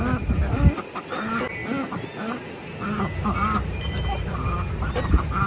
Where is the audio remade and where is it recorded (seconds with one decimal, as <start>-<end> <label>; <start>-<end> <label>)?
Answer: 0.0-5.5 recorded